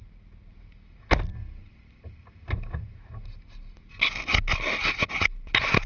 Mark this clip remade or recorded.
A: recorded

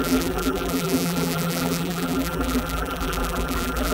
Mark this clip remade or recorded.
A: remade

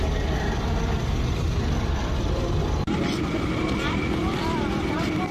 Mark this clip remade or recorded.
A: remade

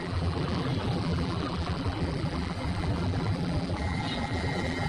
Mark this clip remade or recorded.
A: remade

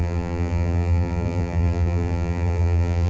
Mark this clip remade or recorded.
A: remade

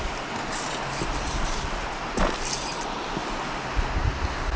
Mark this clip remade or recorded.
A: recorded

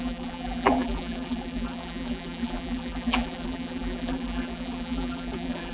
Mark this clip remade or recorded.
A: remade